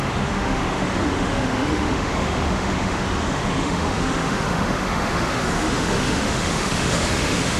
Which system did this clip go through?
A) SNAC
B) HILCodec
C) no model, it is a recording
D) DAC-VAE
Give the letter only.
D